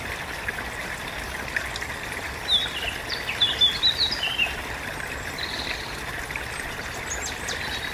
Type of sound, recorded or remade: recorded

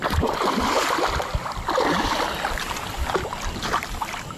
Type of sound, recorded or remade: recorded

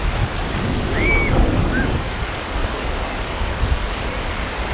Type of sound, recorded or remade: remade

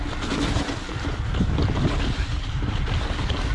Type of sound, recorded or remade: recorded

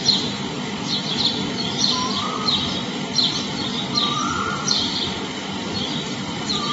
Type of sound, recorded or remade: recorded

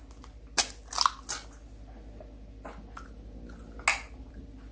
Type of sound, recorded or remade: recorded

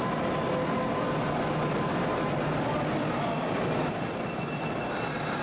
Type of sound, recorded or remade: recorded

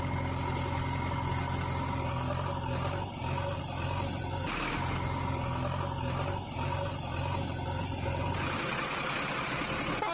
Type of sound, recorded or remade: recorded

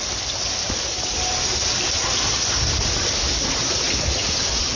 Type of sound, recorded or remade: recorded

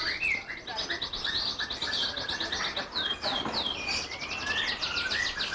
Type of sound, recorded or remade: recorded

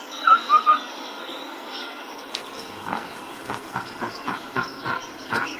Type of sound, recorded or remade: remade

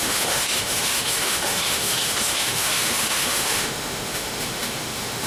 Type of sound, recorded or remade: remade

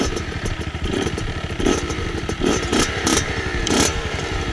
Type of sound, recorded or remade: remade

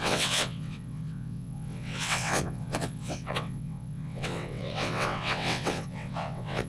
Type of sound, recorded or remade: remade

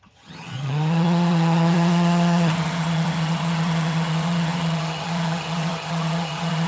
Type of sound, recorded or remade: remade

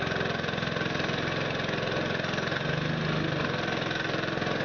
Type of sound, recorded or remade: recorded